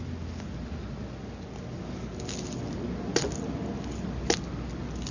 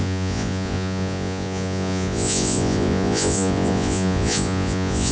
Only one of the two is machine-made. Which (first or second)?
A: second